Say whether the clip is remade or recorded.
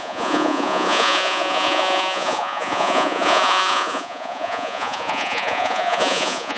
remade